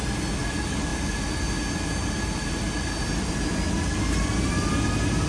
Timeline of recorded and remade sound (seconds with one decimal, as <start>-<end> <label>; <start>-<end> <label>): 0.0-5.3 recorded